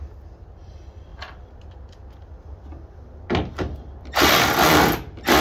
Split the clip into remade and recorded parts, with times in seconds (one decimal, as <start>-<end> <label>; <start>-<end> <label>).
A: 0.0-5.4 recorded